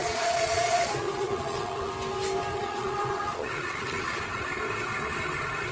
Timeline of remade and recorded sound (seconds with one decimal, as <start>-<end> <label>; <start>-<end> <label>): 0.0-1.9 remade; 1.9-2.5 recorded; 2.5-4.4 remade; 4.4-5.7 recorded